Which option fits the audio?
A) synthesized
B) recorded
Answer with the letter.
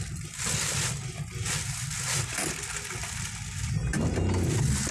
B